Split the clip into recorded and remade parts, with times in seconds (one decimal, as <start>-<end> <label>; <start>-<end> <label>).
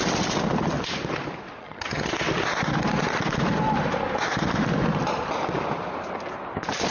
0.0-1.6 recorded; 1.6-2.1 remade; 2.1-6.9 recorded